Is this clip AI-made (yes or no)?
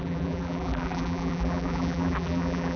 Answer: yes